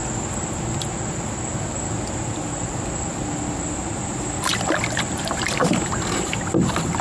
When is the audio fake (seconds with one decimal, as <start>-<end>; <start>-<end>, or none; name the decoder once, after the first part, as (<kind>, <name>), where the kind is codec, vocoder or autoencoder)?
none